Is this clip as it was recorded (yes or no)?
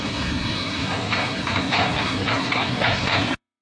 no